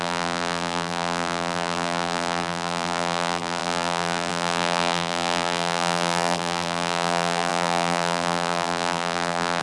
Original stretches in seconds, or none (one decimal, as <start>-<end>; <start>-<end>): none